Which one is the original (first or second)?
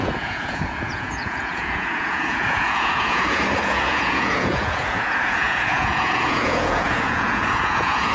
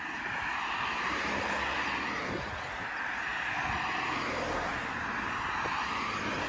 second